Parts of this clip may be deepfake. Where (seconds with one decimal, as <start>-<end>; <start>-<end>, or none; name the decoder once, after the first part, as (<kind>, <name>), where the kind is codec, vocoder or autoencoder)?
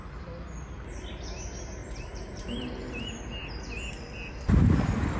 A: 1.8-2.9 (vocoder, BigVGAN v2)